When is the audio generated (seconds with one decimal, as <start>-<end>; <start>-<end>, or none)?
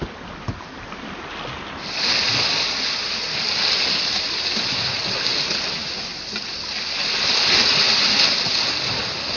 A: none